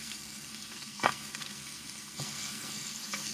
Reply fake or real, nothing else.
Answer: fake